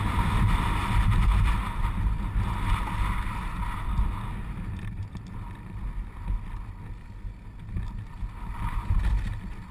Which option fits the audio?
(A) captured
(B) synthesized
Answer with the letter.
A